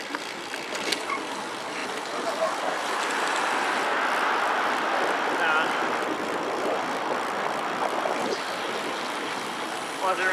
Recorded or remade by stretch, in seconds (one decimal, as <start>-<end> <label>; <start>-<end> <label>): 0.0-10.3 recorded

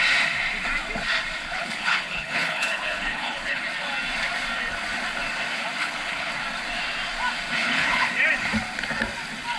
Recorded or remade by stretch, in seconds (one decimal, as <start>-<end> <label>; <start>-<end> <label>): 0.0-1.4 recorded; 1.4-3.6 remade; 3.6-5.8 recorded; 5.8-6.3 remade; 6.3-7.6 recorded; 7.6-8.1 remade; 8.1-9.6 recorded

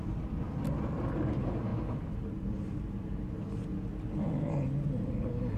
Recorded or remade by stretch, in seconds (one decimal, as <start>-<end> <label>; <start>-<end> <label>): 0.0-1.7 remade; 1.7-5.1 recorded; 5.1-5.6 remade

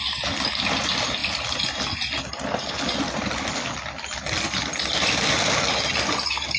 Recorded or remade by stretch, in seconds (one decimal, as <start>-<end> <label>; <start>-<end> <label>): 0.0-6.6 recorded